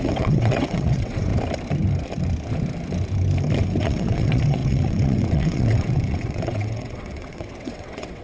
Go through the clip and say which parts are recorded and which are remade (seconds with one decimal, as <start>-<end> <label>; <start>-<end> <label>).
0.0-1.3 remade; 1.3-3.8 recorded; 3.8-8.2 remade